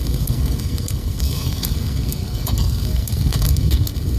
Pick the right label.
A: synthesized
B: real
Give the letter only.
A